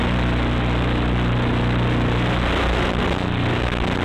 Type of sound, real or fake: real